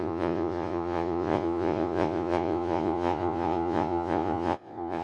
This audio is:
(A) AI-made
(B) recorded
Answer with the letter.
A